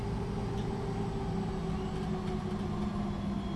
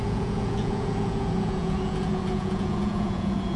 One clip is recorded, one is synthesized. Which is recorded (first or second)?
first